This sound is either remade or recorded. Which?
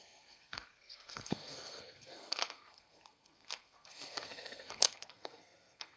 remade